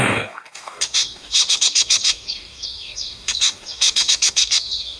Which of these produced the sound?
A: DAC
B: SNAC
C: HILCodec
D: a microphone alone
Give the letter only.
A